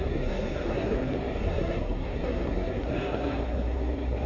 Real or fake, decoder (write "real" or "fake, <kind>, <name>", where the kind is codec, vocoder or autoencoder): fake, codec, SNAC